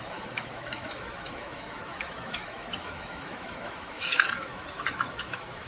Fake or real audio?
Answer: fake